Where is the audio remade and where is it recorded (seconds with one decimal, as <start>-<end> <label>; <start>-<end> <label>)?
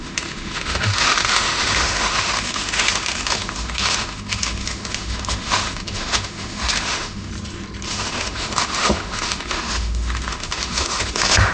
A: 0.0-7.3 remade; 7.3-7.9 recorded; 7.9-11.5 remade